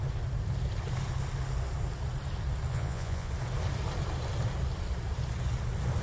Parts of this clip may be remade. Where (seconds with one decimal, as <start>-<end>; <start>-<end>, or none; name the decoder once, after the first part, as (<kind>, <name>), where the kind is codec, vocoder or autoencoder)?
2.7-3.3 (vocoder, Vocos)